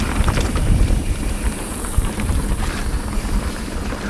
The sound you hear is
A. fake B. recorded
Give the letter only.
A